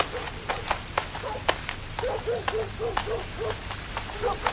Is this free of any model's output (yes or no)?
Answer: yes